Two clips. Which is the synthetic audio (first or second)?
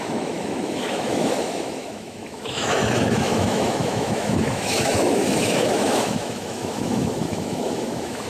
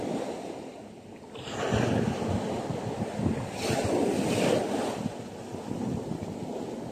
first